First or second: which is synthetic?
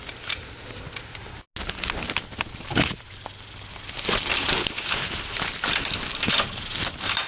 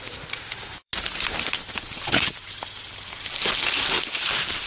second